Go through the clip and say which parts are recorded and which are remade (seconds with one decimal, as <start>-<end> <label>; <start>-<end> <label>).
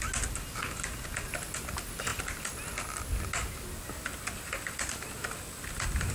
0.0-6.1 recorded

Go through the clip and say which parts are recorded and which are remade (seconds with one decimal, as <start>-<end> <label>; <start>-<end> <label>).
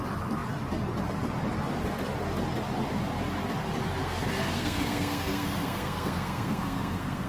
0.0-4.0 recorded; 4.0-7.3 remade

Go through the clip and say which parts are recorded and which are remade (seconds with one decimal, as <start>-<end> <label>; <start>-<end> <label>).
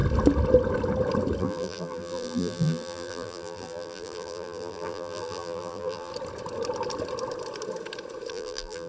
0.0-1.4 recorded; 1.4-6.1 remade; 6.1-8.3 recorded; 8.3-8.9 remade